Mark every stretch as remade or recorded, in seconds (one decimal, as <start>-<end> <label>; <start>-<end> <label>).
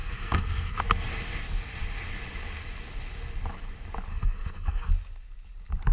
0.0-0.8 remade; 0.8-4.1 recorded; 4.1-4.9 remade; 4.9-5.9 recorded